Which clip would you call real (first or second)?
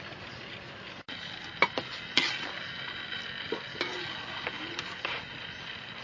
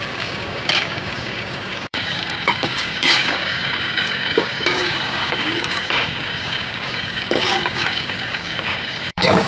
first